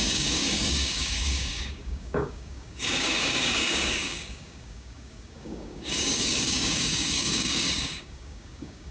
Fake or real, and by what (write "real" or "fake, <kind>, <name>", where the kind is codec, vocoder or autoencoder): fake, codec, DAC